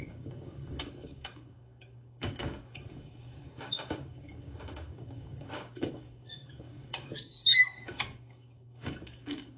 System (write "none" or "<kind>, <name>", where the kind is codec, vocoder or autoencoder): codec, DAC